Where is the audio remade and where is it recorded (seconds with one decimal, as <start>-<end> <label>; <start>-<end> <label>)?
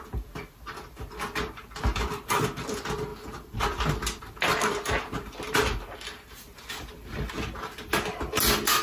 0.0-8.8 recorded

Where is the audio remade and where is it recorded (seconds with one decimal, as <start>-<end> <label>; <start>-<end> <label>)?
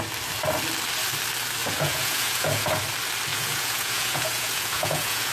0.0-1.6 recorded; 1.6-2.8 remade; 2.8-3.3 recorded; 3.3-5.3 remade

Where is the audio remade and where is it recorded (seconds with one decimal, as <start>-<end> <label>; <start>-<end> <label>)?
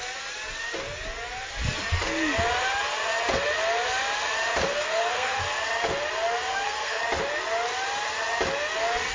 0.0-4.7 recorded; 4.7-5.4 remade; 5.4-6.5 recorded; 6.5-7.0 remade; 7.0-9.1 recorded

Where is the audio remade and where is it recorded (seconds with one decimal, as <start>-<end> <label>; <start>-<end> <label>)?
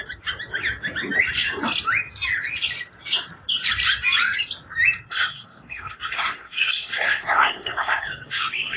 0.0-5.1 recorded; 5.1-8.8 remade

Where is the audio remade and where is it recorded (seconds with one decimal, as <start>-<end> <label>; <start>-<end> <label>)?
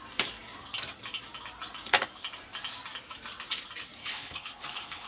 0.0-4.0 recorded; 4.0-5.1 remade